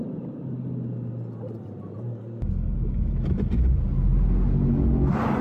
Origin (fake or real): real